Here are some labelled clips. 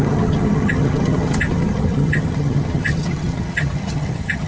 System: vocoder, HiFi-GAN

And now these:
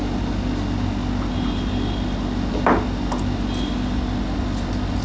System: none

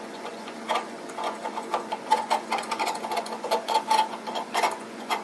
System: vocoder, Vocos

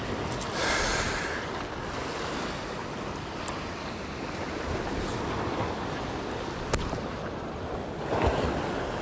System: none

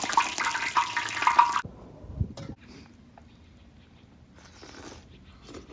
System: none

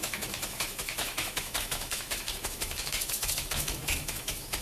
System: autoencoder, DAC-VAE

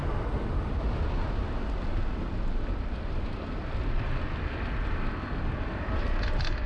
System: none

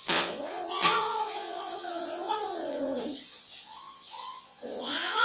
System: vocoder, Vocos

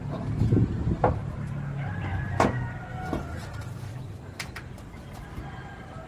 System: none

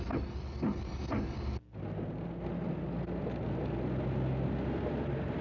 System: none